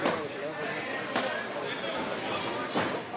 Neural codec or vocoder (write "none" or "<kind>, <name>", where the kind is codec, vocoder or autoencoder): none